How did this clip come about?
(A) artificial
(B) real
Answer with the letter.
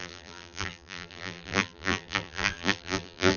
A